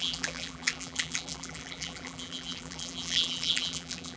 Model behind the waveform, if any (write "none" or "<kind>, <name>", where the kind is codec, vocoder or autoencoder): vocoder, BigVGAN v2